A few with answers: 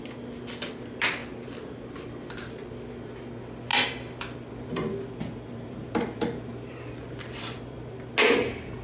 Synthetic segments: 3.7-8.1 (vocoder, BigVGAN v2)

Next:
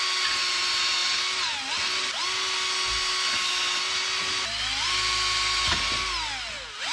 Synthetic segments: none